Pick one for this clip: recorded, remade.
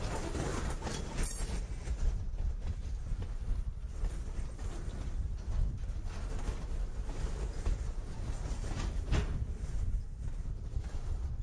recorded